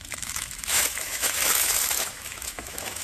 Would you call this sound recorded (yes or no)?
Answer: no